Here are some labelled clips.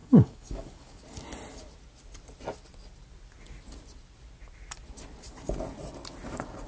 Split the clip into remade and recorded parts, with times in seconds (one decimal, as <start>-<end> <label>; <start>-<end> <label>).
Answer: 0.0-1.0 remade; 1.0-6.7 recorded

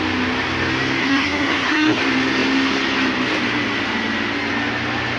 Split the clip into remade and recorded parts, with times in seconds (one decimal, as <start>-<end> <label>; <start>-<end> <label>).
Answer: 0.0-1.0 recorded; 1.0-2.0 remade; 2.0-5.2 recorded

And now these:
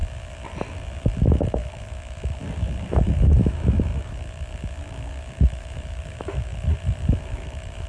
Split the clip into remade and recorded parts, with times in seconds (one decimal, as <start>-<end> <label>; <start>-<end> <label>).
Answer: 0.0-1.3 recorded; 1.3-2.4 remade; 2.4-2.9 recorded; 2.9-7.9 remade

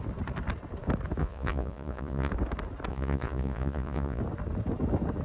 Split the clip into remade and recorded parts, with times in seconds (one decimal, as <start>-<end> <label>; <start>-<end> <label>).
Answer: 0.0-1.2 recorded; 1.2-2.3 remade; 2.3-2.9 recorded; 2.9-4.2 remade; 4.2-5.2 recorded

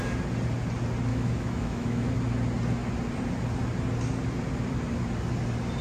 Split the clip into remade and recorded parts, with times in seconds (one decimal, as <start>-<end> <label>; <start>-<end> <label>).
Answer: 0.0-1.1 recorded; 1.1-2.1 remade; 2.1-5.8 recorded

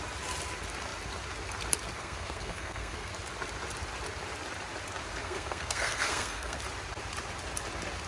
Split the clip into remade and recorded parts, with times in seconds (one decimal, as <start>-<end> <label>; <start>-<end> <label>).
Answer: 0.0-2.0 recorded; 2.0-3.1 remade; 3.1-5.2 recorded; 5.2-6.6 remade; 6.6-8.1 recorded

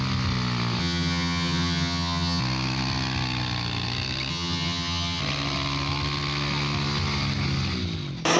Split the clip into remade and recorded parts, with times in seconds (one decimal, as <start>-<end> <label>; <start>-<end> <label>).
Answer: 0.0-0.8 recorded; 0.8-2.4 remade; 2.4-4.3 recorded; 4.3-5.2 remade; 5.2-8.4 recorded

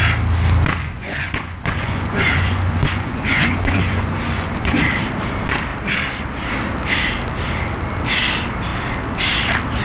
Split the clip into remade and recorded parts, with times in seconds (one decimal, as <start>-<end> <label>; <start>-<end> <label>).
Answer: 0.0-0.8 recorded; 0.8-4.8 remade; 4.8-9.8 recorded